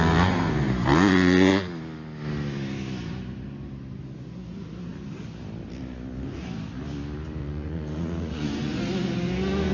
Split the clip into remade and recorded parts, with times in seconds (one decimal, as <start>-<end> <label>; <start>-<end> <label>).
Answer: 0.0-7.4 recorded; 7.4-8.8 remade; 8.8-9.7 recorded